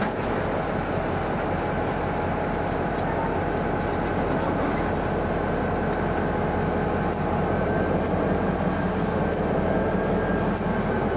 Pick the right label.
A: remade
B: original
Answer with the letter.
B